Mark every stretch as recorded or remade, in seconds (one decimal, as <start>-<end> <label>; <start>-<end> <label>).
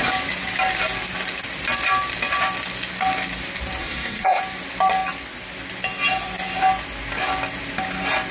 0.0-3.8 recorded; 3.8-4.4 remade; 4.4-8.3 recorded